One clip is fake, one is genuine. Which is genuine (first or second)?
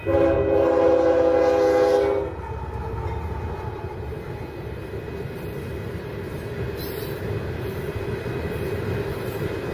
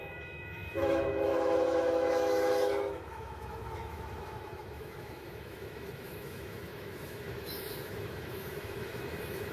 first